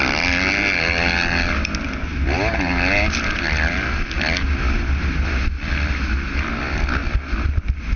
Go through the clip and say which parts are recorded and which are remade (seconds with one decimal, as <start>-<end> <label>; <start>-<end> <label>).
0.0-8.0 recorded